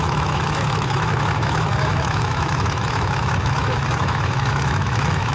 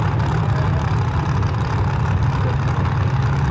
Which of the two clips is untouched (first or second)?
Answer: second